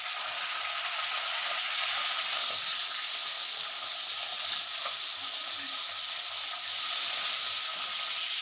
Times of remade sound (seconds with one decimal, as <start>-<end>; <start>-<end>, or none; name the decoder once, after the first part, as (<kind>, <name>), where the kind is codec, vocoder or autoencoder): none